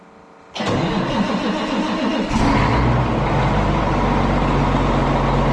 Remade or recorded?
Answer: recorded